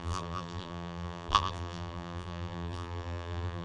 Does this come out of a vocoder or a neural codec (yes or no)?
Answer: yes